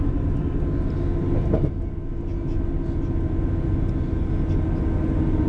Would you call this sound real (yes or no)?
yes